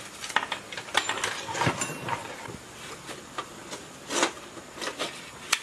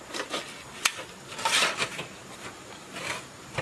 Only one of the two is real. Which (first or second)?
second